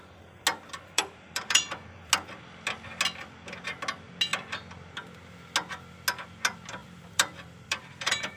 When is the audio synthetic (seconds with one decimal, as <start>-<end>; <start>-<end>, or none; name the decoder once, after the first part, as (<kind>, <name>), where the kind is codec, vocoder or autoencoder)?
0.5-2.1 (vocoder, BigVGAN v2); 6.8-8.4